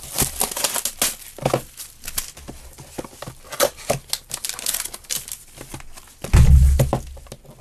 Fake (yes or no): no